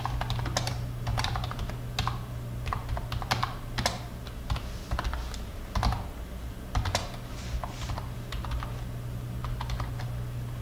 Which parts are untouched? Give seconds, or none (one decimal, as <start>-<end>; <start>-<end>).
0.0-10.6